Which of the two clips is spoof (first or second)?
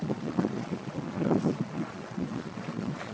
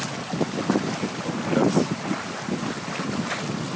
first